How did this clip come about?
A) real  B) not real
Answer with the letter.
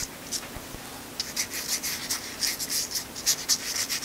A